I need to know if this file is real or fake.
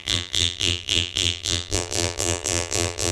fake